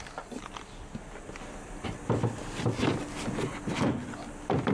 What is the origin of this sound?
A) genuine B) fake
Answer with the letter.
A